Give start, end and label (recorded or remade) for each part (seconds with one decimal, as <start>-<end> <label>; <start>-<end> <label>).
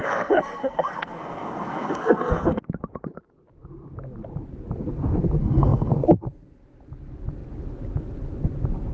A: 0.0-2.6 remade; 2.6-5.4 recorded; 5.4-5.9 remade; 5.9-8.9 recorded